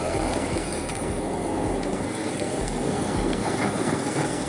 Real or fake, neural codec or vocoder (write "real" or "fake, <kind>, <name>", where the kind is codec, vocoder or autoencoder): fake, codec, SNAC